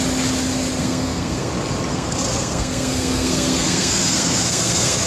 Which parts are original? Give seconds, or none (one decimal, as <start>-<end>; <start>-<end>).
0.0-0.8; 1.5-1.9

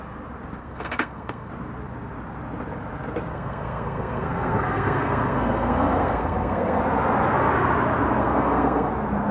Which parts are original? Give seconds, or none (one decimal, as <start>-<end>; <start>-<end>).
0.0-0.6; 1.5-3.3; 6.8-8.2; 8.9-9.3

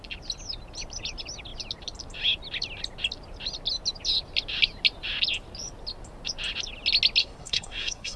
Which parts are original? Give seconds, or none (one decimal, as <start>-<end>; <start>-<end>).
0.0-7.2